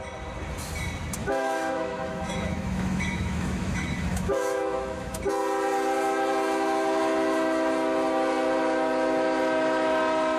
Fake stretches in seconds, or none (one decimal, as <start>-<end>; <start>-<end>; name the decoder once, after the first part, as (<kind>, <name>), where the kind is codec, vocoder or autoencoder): 1.2-5.2 (autoencoder, DAC-VAE)